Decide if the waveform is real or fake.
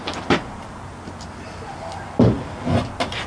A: real